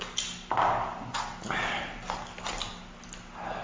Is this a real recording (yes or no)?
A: yes